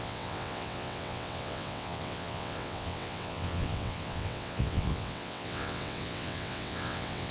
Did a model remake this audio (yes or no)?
yes